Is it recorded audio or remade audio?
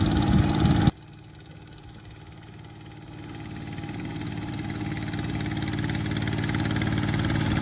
recorded